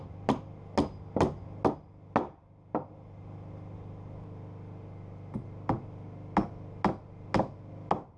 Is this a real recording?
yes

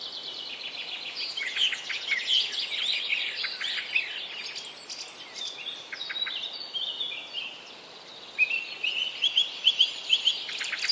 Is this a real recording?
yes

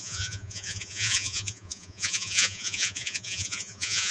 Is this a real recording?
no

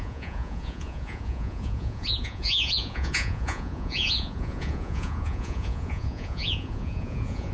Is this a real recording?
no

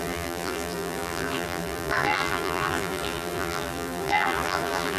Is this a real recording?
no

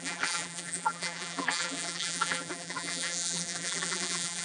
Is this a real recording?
no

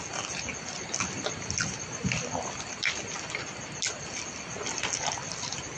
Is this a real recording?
yes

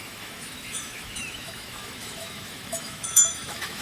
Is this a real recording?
no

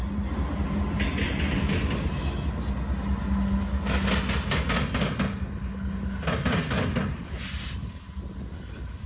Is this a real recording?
yes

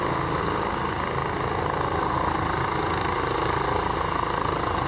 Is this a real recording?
yes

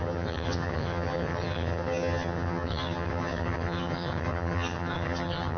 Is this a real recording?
no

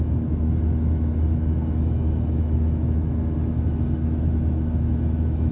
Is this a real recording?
no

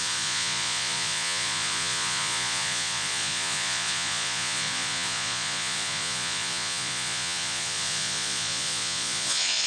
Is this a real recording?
no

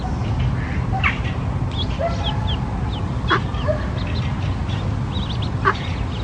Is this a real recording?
yes